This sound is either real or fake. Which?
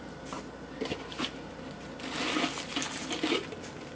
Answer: real